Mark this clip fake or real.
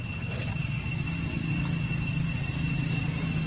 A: real